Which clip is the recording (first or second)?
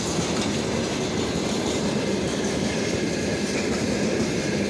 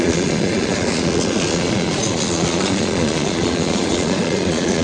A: first